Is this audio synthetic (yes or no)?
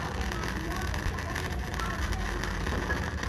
no